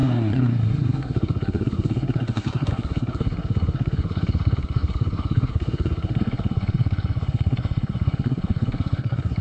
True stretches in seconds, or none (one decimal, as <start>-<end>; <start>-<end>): none